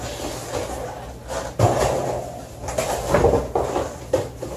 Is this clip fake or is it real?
real